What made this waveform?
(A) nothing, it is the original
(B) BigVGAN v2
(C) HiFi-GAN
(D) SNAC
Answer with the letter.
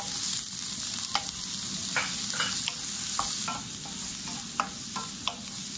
A